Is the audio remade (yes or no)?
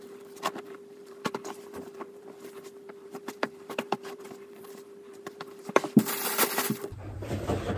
yes